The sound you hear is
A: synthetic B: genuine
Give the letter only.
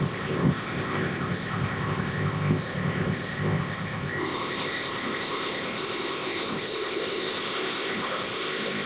A